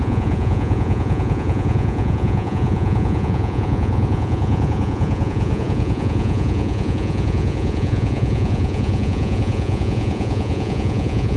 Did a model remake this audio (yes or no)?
yes